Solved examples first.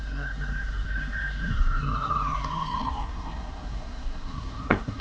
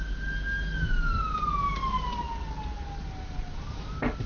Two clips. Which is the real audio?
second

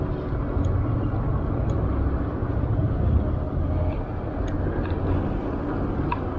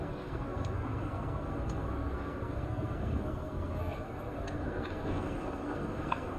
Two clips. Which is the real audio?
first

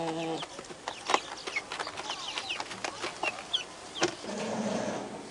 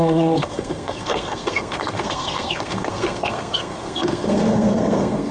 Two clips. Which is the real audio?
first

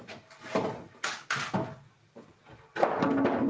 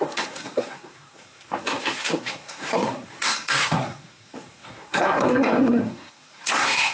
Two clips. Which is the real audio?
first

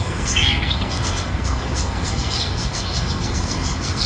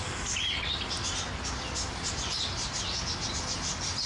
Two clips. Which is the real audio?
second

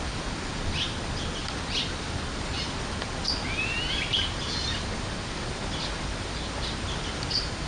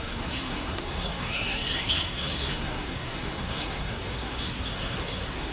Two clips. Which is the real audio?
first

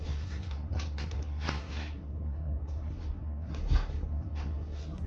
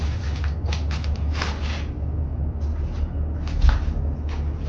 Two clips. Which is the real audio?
second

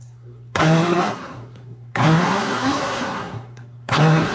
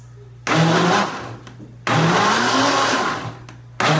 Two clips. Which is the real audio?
second